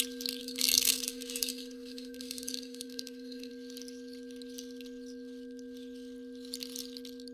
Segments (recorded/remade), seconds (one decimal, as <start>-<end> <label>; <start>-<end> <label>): 0.0-0.4 recorded; 0.4-3.5 remade; 3.5-7.3 recorded